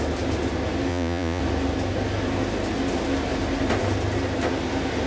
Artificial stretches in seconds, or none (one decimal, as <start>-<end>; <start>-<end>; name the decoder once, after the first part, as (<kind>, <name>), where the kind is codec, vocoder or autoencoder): 0.9-1.4 (vocoder, Vocos)